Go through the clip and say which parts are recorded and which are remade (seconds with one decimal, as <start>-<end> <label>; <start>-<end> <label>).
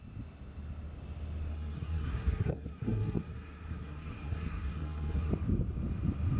0.0-1.5 recorded; 1.5-5.3 remade; 5.3-6.4 recorded